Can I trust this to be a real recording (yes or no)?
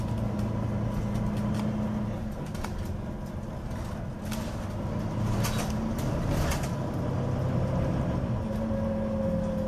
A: yes